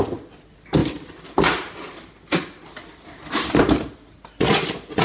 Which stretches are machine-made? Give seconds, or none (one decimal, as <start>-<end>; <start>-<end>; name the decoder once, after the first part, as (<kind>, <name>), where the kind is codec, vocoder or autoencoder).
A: none